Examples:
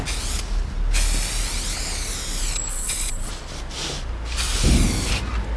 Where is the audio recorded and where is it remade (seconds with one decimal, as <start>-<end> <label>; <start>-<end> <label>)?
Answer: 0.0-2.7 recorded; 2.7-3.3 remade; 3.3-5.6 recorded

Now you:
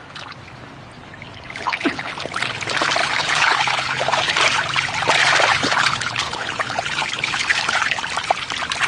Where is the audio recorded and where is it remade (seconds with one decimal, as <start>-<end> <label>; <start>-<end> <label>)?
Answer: 0.0-1.0 recorded; 1.0-2.1 remade; 2.1-3.0 recorded; 3.0-4.3 remade; 4.3-5.5 recorded; 5.5-8.0 remade; 8.0-8.9 recorded

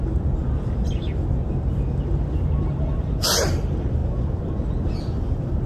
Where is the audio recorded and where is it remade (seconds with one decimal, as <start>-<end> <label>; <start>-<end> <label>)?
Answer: 0.0-5.7 recorded

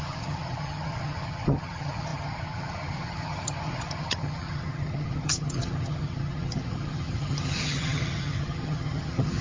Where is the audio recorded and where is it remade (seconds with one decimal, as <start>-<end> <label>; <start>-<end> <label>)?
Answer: 0.0-9.4 remade

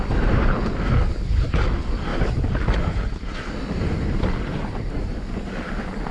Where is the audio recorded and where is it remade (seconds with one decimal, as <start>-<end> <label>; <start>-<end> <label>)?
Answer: 0.0-6.1 recorded

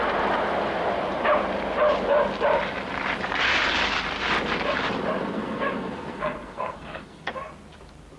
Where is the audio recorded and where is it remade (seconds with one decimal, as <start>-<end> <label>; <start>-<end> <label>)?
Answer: 0.0-5.3 recorded; 5.3-7.5 remade; 7.5-8.2 recorded

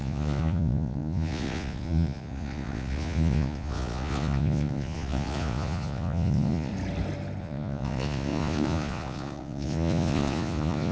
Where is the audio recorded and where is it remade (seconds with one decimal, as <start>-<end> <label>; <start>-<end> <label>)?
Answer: 0.0-6.7 remade; 6.7-7.4 recorded; 7.4-10.9 remade

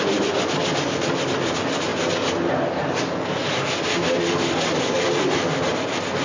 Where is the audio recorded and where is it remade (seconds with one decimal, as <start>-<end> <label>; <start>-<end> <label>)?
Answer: 0.0-6.2 recorded